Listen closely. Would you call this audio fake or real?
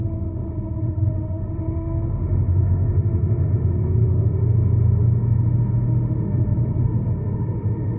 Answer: fake